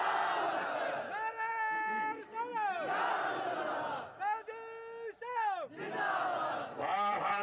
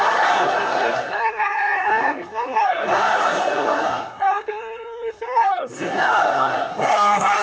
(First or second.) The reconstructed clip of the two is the second